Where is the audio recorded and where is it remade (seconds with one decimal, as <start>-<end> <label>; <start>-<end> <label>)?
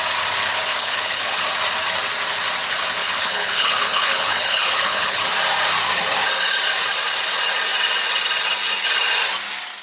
0.0-0.7 recorded; 0.7-1.4 remade; 1.4-3.0 recorded; 3.0-5.2 remade; 5.2-9.8 recorded